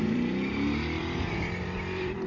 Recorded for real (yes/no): no